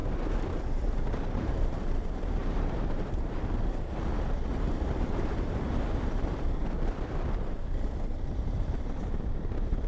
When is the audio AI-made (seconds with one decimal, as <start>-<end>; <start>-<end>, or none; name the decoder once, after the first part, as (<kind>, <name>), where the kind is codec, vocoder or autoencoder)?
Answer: 0.7-9.9 (vocoder, BigVGAN v2)